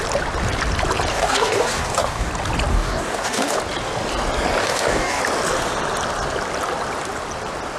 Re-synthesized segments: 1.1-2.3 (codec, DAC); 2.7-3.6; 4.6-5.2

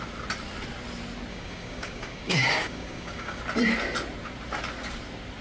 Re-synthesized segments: 1.3-3.4 (codec, DAC)

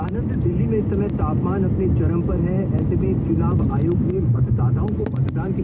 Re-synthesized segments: 4.0-4.6 (codec, DAC)

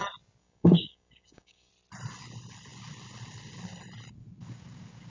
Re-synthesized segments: 0.4-1.7 (codec, DAC)